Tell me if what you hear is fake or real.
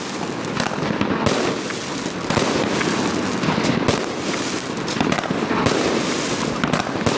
real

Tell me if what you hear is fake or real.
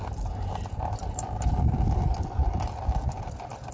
real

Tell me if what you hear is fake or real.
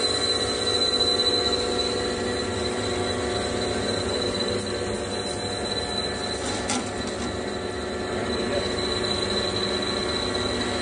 real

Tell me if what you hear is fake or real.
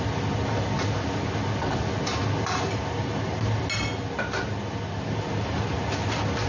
real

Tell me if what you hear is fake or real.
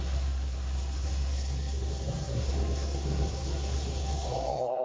fake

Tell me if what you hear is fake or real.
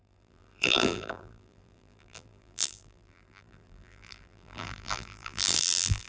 fake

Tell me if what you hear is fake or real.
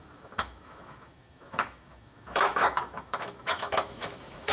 fake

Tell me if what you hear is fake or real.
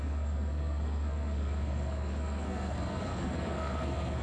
fake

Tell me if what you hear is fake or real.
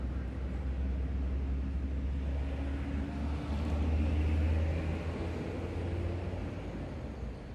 real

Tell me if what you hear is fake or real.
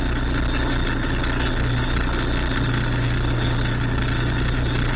real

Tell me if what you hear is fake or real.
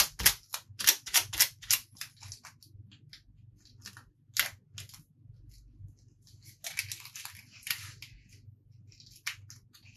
real